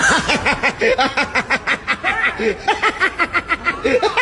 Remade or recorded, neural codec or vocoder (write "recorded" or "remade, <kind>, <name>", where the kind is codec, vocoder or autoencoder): recorded